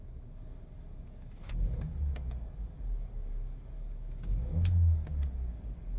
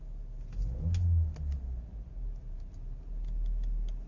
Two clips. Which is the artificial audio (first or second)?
first